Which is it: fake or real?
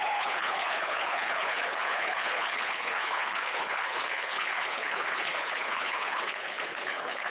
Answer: fake